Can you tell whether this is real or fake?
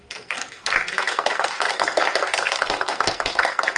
fake